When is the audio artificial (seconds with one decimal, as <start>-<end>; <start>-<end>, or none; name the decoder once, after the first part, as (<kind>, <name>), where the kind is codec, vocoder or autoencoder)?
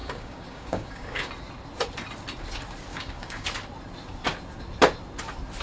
0.0-1.3 (codec, DAC); 2.9-3.5